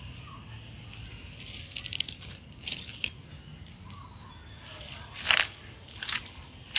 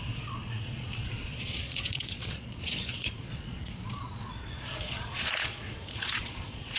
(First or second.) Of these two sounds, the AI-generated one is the second